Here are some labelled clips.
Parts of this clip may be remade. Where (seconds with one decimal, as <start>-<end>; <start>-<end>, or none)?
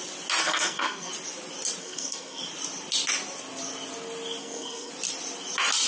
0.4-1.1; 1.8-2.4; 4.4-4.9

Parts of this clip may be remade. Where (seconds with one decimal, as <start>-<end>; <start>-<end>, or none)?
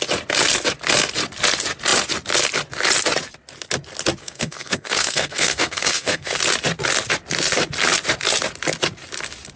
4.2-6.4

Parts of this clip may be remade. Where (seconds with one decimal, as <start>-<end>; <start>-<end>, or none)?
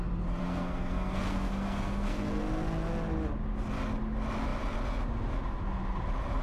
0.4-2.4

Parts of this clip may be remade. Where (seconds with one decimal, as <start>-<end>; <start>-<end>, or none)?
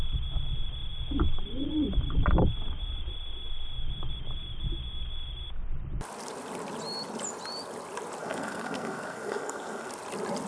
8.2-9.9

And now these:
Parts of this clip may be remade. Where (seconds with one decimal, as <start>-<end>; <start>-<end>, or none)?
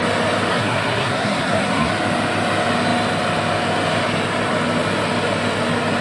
0.5-1.9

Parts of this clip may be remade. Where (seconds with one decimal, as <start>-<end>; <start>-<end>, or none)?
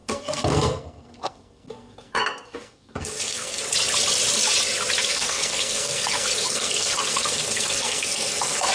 0.0-3.6; 5.0-8.7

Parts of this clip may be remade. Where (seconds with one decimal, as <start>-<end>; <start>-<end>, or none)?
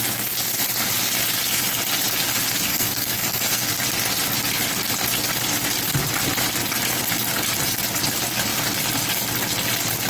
2.7-3.7